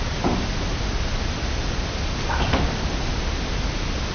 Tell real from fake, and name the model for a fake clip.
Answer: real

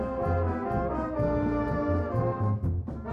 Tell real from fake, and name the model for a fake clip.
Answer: real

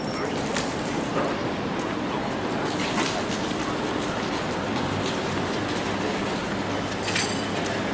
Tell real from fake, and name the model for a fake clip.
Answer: real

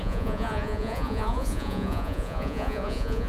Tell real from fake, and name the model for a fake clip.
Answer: fake, vocoder, Vocos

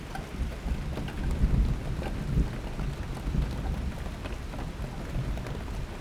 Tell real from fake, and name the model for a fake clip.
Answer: real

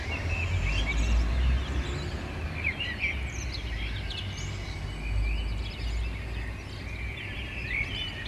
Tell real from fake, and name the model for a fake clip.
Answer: real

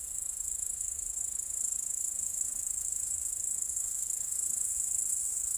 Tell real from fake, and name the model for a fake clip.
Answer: fake, codec, SNAC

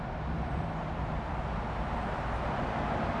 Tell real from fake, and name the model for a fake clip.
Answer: real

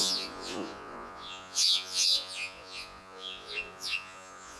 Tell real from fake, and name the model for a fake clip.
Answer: fake, vocoder, Vocos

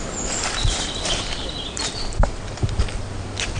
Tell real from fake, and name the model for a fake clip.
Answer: real